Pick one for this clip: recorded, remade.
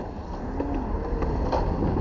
recorded